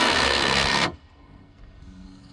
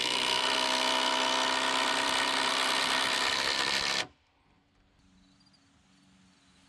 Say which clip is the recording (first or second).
second